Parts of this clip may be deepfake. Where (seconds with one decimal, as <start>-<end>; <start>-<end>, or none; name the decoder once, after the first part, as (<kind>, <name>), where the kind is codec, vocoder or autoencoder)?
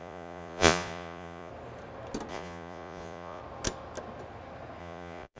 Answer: 0.0-1.5 (vocoder, Vocos); 2.3-3.4; 4.8-5.4